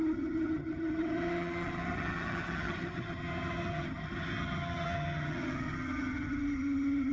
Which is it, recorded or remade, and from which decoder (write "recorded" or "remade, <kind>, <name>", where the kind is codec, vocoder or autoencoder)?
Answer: remade, vocoder, HiFi-GAN